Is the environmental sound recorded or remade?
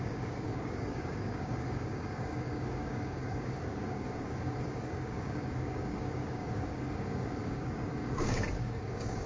remade